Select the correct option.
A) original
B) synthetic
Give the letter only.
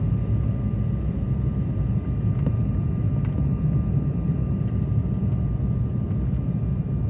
A